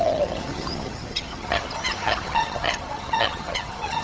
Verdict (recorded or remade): remade